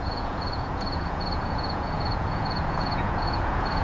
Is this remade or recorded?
remade